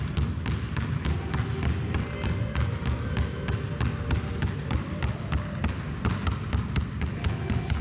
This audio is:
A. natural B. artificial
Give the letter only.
A